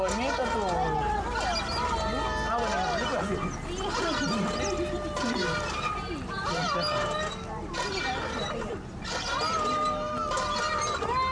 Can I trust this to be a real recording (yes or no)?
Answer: yes